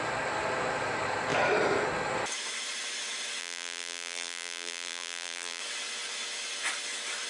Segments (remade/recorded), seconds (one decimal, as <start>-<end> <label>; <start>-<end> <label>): 0.0-3.4 recorded; 3.4-5.6 remade; 5.6-7.3 recorded